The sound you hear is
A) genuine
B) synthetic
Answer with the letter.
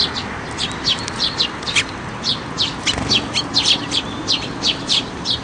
B